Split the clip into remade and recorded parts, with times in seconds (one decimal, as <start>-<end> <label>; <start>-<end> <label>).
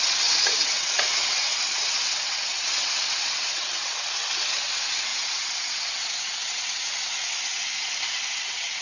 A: 0.0-8.8 remade